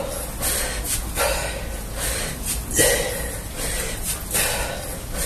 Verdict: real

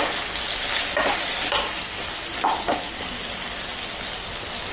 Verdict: real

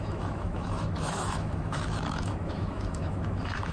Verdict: fake